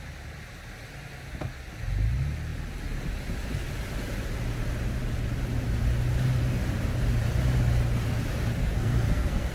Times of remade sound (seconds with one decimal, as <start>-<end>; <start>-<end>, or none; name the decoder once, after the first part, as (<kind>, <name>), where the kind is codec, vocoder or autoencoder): 8.6-9.5 (codec, SNAC)